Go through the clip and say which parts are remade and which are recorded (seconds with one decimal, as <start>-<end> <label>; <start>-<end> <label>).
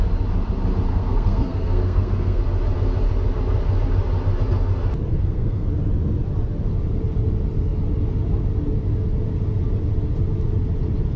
0.0-0.9 recorded; 0.9-2.4 remade; 2.4-5.1 recorded; 5.1-5.7 remade; 5.7-11.2 recorded